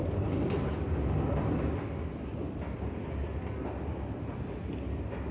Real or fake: real